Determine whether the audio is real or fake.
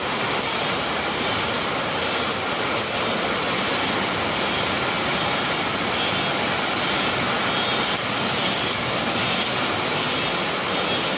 real